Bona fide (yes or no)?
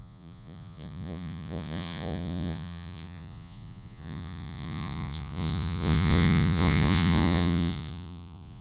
no